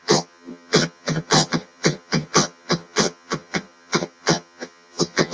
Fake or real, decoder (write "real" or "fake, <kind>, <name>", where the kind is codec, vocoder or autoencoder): fake, vocoder, HiFi-GAN